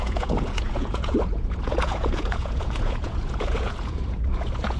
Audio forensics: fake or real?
fake